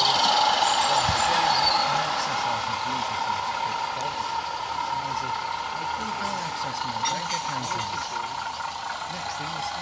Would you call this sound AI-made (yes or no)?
no